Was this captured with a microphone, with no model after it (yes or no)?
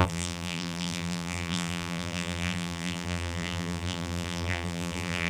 no